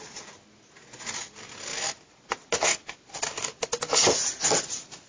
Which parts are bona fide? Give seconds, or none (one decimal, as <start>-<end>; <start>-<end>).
0.0-5.1

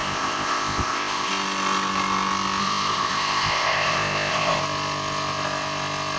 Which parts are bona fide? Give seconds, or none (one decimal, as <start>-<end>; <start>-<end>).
1.3-2.6; 4.6-6.2

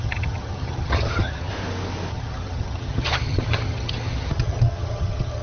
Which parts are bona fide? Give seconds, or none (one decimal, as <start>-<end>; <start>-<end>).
1.5-2.1

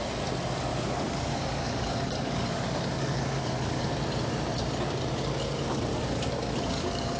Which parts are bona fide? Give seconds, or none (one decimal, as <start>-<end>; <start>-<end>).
0.0-0.7; 3.8-5.9

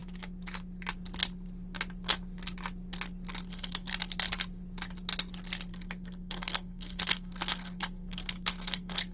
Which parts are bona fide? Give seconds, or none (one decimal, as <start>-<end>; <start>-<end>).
0.0-3.5; 3.9-5.7

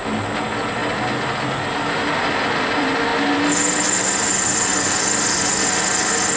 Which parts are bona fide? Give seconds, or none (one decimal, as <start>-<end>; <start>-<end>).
0.0-6.4